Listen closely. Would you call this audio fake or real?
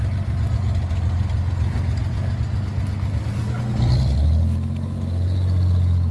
real